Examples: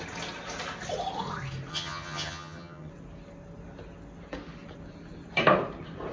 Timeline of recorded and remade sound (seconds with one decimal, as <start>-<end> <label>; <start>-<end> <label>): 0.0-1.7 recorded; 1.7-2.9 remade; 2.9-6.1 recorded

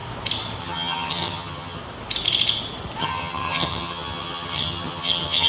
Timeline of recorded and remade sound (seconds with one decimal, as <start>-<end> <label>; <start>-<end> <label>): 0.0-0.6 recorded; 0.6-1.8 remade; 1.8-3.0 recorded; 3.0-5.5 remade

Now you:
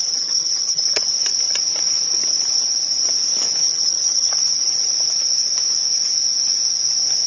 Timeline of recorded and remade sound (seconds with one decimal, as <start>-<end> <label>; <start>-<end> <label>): 0.0-1.1 remade; 1.1-3.6 recorded; 3.6-4.3 remade; 4.3-7.3 recorded

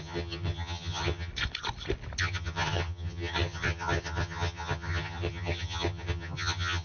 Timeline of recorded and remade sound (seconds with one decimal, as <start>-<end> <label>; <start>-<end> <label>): 0.0-1.3 remade; 1.3-2.2 recorded; 2.2-6.8 remade

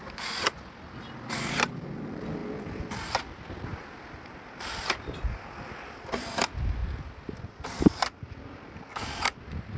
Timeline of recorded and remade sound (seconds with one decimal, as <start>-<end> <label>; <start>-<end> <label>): 0.0-9.8 recorded

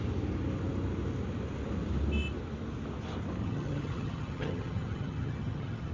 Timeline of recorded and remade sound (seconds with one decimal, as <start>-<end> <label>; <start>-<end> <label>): 0.0-3.4 recorded; 3.4-5.9 remade

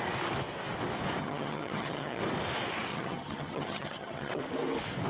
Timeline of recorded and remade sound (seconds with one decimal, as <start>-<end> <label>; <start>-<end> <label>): 0.0-1.2 recorded; 1.2-2.2 remade; 2.2-2.9 recorded; 2.9-4.4 remade; 4.4-5.1 recorded